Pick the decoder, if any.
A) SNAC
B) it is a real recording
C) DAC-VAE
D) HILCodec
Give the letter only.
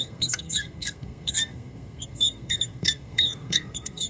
A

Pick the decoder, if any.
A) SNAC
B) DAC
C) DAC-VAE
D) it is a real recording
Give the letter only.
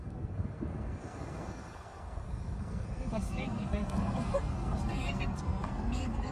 A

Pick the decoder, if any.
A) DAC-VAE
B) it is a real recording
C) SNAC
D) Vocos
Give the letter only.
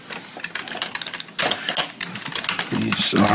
B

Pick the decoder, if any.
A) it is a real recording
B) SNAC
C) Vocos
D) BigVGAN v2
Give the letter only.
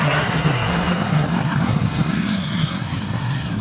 B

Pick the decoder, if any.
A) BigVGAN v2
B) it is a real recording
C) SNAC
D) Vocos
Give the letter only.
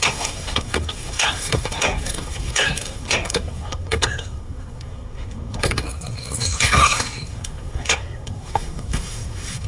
C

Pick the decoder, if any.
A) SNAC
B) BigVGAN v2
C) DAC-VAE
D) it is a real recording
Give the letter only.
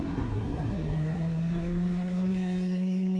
A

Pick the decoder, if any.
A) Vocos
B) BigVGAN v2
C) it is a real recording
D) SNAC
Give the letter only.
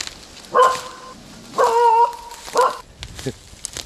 C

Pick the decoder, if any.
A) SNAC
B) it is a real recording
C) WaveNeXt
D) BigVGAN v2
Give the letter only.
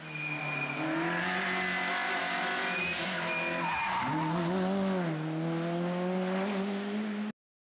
B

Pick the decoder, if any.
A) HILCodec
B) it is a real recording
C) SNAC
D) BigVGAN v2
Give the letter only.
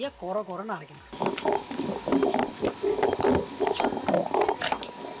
B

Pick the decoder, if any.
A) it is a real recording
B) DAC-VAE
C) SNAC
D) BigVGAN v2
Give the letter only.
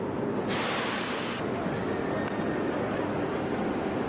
A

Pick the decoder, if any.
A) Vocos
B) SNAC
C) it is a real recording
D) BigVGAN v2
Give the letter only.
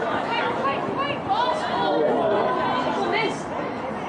C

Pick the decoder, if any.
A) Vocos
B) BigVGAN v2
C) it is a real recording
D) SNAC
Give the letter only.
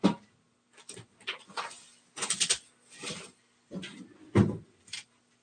C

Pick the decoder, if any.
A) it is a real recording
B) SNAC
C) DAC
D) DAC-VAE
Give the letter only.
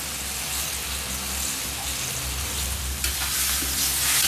A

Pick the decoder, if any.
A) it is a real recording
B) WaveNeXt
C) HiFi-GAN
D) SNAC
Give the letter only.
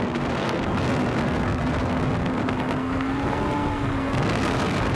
D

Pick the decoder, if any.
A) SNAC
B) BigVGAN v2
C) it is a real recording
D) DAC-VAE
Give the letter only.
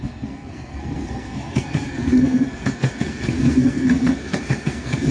A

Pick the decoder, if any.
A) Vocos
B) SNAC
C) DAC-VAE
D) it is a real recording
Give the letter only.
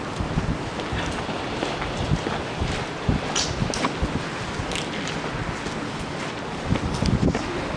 D